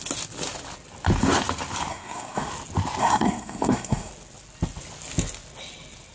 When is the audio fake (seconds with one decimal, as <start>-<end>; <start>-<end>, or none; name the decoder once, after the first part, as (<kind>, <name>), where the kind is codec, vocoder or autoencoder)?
1.9-2.5 (codec, SNAC); 3.0-4.1